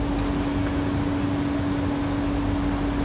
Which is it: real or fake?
real